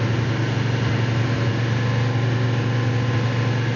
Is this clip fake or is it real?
real